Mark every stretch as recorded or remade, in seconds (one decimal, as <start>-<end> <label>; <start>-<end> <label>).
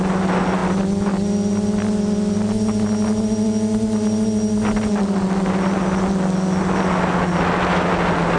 0.0-8.4 recorded